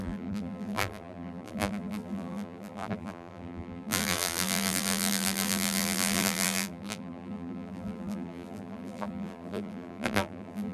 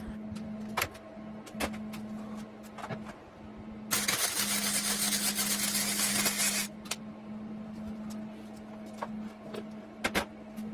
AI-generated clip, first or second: first